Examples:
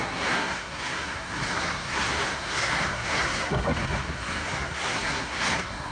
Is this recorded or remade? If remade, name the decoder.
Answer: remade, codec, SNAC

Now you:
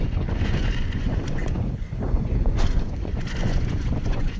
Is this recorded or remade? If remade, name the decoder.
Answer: remade, vocoder, Vocos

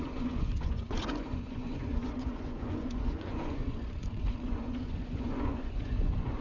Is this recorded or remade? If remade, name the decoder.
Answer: remade, vocoder, Vocos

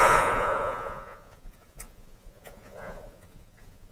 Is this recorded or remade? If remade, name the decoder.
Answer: remade, vocoder, Vocos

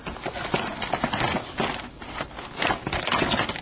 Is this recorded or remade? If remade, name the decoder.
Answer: recorded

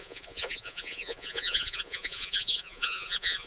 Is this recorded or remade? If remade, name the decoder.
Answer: remade, vocoder, Vocos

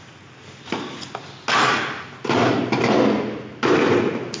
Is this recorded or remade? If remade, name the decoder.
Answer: recorded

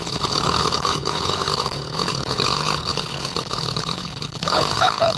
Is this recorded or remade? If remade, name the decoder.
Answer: remade, codec, HILCodec